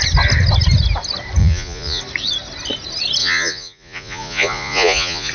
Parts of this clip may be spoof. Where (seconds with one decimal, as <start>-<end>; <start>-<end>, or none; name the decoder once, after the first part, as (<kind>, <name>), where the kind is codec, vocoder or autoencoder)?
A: 1.4-2.0 (vocoder, Vocos); 3.2-5.3